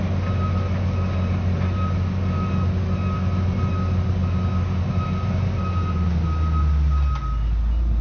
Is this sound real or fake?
real